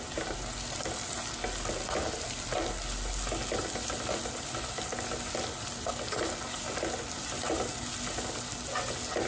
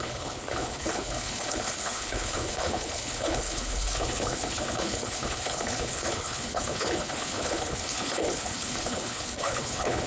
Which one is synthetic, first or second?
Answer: second